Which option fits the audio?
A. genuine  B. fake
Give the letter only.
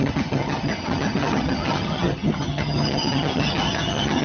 B